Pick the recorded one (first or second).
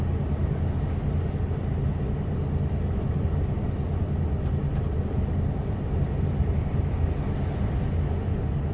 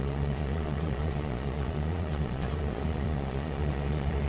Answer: first